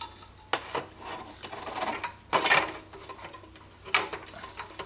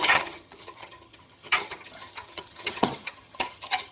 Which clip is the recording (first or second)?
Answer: first